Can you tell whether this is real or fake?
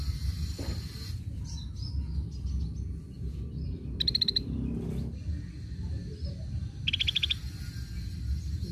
real